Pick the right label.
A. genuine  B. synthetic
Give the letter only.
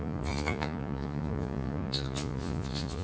B